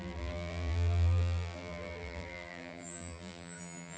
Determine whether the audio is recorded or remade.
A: remade